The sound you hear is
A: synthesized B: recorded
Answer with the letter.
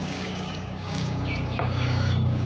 A